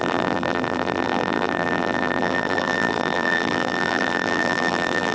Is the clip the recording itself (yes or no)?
no